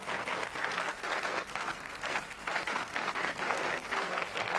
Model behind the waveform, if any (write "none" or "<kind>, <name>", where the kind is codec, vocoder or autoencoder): codec, SNAC